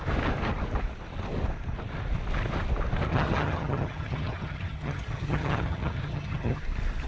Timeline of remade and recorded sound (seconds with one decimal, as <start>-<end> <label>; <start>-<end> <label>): 0.0-3.1 recorded; 3.1-6.6 remade; 6.6-7.1 recorded